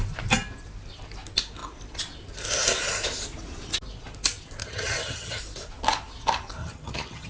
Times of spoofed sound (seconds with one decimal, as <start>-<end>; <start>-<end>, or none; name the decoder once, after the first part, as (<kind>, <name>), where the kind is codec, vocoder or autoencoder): 4.6-5.4 (vocoder, HiFi-GAN); 6.6-7.3